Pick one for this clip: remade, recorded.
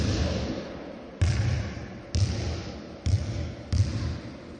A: recorded